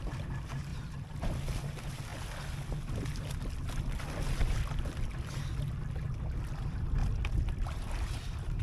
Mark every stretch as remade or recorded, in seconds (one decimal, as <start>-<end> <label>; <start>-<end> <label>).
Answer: 0.0-0.7 remade; 0.7-1.6 recorded; 1.6-2.1 remade; 2.1-6.6 recorded; 6.6-7.0 remade; 7.0-7.7 recorded; 7.7-8.6 remade